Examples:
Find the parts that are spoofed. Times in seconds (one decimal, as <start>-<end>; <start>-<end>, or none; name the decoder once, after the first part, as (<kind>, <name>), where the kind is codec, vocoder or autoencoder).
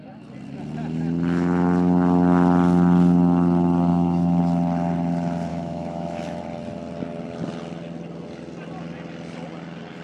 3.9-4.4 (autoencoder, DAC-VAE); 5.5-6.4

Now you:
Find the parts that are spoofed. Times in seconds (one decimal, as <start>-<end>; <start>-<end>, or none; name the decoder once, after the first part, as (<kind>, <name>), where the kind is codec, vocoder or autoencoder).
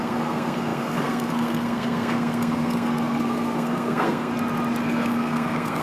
0.0-4.3 (codec, SNAC); 4.8-5.8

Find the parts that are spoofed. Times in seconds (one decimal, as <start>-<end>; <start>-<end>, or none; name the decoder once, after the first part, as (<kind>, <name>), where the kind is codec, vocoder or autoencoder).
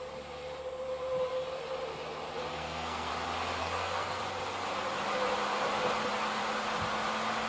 2.5-3.1 (codec, SNAC); 3.6-4.2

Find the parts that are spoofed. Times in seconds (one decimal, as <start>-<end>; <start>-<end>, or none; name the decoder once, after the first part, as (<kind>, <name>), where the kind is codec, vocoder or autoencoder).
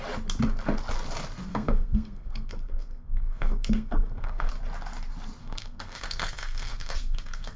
1.5-4.5 (codec, SNAC); 5.4-7.6